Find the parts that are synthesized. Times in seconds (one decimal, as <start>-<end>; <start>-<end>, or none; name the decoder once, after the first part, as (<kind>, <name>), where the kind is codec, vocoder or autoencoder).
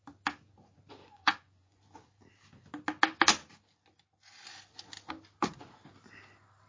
1.0-1.8 (vocoder, Vocos)